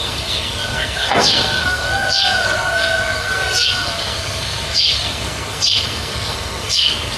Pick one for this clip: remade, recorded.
remade